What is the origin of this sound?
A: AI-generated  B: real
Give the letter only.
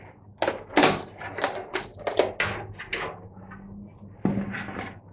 B